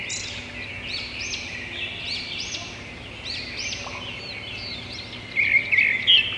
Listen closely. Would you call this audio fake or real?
real